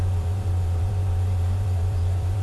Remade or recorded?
remade